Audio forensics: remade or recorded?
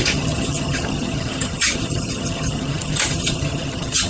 remade